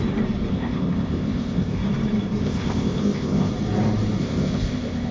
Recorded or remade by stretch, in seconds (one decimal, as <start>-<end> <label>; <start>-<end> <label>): 0.0-0.5 recorded; 0.5-1.8 remade; 1.8-2.4 recorded; 2.4-3.5 remade; 3.5-4.2 recorded; 4.2-5.1 remade